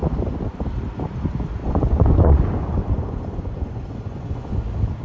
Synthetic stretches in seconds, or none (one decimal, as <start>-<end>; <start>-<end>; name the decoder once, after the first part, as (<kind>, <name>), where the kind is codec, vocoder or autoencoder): 1.6-4.6 (vocoder, Vocos)